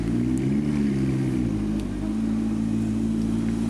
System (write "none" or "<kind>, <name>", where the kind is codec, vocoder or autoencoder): none